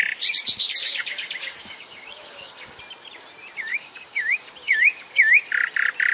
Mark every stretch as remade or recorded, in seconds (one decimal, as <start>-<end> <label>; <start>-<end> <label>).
0.0-0.7 recorded; 0.7-2.8 remade; 2.8-3.7 recorded; 3.7-4.5 remade; 4.5-6.1 recorded